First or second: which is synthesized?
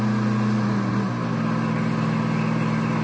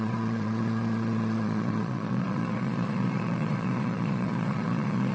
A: second